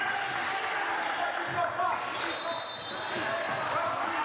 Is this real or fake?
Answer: real